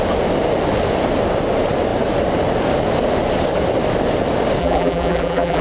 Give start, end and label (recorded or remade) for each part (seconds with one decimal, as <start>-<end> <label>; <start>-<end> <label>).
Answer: 0.0-4.6 recorded; 4.6-5.6 remade